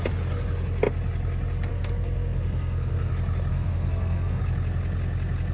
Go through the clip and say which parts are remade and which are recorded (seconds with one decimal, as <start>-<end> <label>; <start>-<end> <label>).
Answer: 0.0-1.7 recorded; 1.7-3.1 remade; 3.1-3.5 recorded; 3.5-4.4 remade; 4.4-5.5 recorded